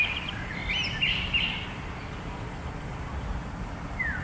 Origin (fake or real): real